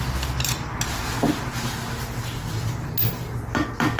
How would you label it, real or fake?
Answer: real